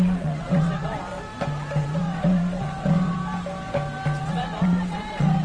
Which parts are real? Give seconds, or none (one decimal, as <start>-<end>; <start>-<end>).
1.1-1.8; 3.2-4.2